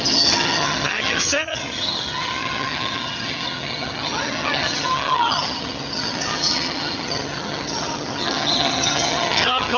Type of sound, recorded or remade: remade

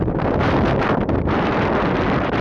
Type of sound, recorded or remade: recorded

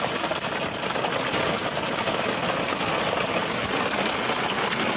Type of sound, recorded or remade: recorded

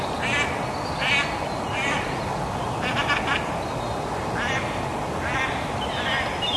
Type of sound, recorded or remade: recorded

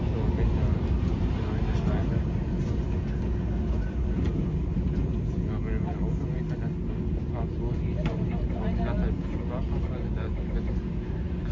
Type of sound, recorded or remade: recorded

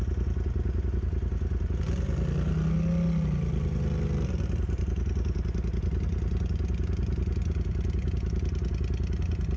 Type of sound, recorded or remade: recorded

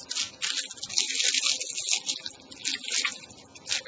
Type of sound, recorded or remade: recorded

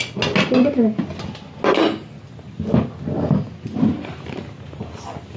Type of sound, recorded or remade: recorded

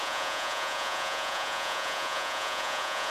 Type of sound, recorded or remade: remade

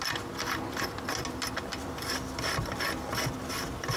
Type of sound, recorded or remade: recorded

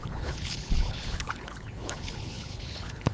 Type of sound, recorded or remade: remade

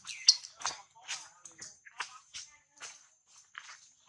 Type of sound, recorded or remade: recorded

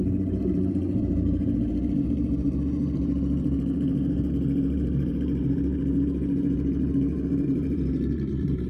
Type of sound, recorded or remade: remade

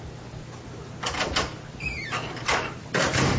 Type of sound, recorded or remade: recorded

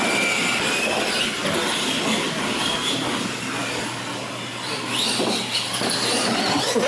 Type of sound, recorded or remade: recorded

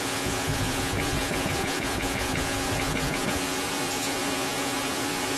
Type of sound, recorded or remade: remade